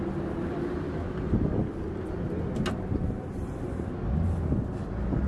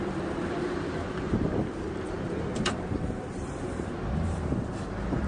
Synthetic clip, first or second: second